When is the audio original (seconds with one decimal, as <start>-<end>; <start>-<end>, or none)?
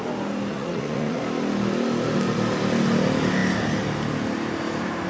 0.0-0.5; 1.2-5.1